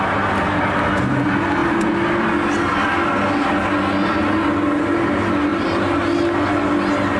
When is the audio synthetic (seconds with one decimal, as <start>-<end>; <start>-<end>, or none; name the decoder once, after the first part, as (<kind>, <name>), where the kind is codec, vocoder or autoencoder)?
5.5-6.0 (vocoder, BigVGAN v2)